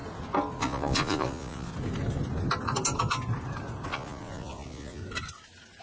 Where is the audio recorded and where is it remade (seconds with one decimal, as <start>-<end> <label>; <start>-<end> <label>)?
0.0-0.6 recorded; 0.6-1.7 remade; 1.7-3.9 recorded; 3.9-5.0 remade; 5.0-5.8 recorded